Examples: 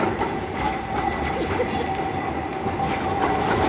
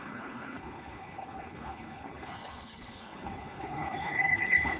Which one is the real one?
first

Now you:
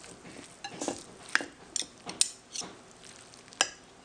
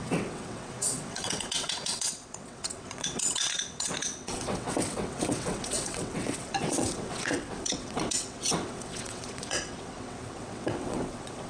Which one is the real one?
first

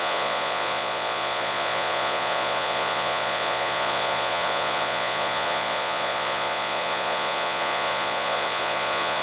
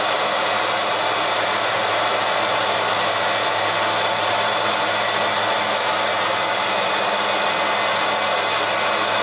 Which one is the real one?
second